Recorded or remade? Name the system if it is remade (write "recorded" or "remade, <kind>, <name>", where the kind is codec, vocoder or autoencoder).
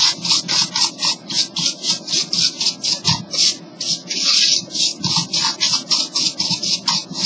recorded